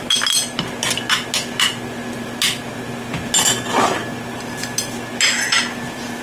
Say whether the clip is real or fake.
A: real